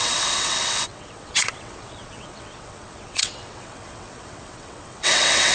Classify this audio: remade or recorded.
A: remade